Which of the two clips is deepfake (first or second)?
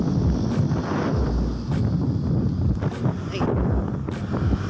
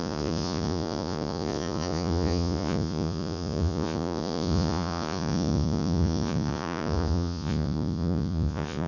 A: second